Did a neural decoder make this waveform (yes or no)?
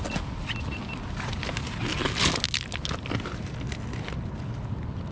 no